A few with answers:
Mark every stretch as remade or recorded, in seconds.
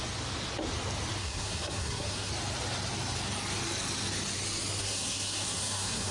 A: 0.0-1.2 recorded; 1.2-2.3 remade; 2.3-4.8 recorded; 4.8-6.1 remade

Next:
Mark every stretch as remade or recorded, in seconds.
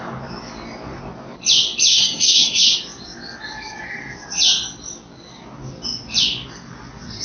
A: 0.0-1.9 recorded; 1.9-2.6 remade; 2.6-7.2 recorded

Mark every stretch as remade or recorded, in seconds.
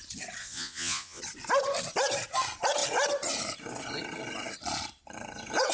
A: 0.0-0.4 recorded; 0.4-1.2 remade; 1.2-5.7 recorded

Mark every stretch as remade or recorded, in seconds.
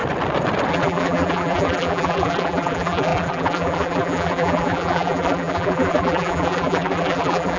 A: 0.0-0.7 recorded; 0.7-7.6 remade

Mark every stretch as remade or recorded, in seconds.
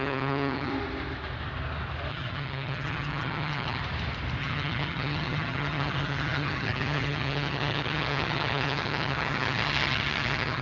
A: 0.0-0.7 remade; 0.7-2.1 recorded; 2.1-3.8 remade; 3.8-4.4 recorded; 4.4-10.6 remade